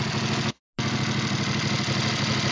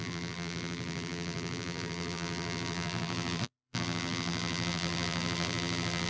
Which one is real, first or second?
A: first